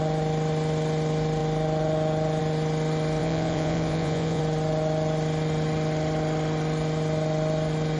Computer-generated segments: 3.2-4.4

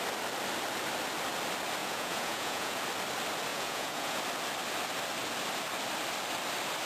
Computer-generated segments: 1.8-2.8; 3.5-4.2